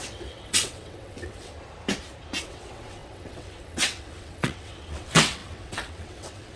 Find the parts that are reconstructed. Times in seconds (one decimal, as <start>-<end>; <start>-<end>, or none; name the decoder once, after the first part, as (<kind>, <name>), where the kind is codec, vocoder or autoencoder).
0.0-1.5 (vocoder, WaveNeXt); 2.4-6.6